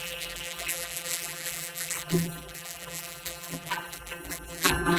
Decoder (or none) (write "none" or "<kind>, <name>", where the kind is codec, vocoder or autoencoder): vocoder, BigVGAN v2